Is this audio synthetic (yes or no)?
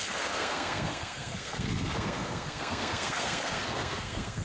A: yes